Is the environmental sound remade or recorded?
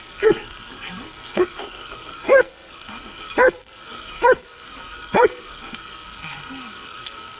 remade